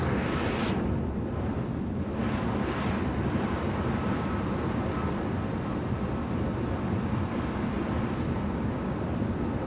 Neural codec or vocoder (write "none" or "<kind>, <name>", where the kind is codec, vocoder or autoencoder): none